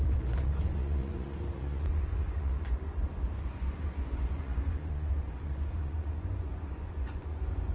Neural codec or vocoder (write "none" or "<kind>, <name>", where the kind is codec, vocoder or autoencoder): vocoder, Vocos